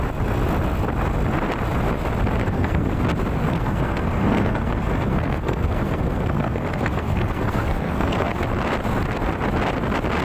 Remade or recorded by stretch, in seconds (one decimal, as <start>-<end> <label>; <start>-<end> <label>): 0.0-2.4 recorded; 2.4-3.0 remade; 3.0-3.4 recorded; 3.4-8.4 remade; 8.4-10.2 recorded